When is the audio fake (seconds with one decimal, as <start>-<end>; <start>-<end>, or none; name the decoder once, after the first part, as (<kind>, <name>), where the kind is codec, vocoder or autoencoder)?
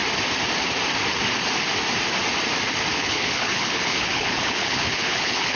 2.9-5.6 (codec, HILCodec)